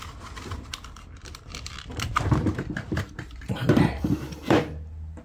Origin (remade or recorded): remade